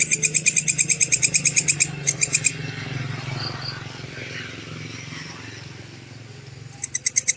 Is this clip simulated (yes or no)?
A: no